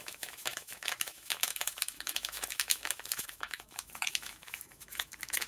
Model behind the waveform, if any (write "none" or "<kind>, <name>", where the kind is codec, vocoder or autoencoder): autoencoder, DAC-VAE